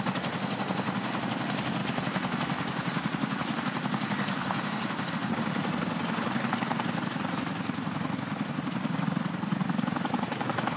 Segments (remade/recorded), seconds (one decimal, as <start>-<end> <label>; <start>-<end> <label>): 0.0-10.8 recorded